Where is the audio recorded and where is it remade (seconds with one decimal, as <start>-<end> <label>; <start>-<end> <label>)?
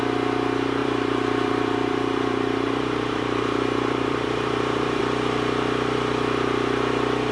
0.0-0.8 recorded; 0.8-5.0 remade; 5.0-7.3 recorded